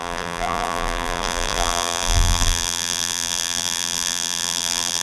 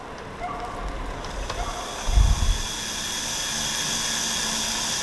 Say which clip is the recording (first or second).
second